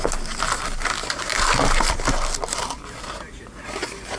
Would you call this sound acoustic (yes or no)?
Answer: yes